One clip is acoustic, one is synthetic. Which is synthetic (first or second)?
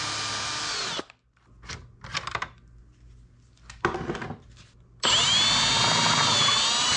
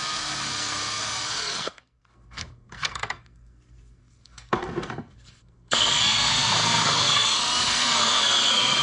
second